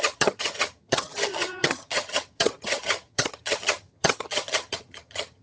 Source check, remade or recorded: remade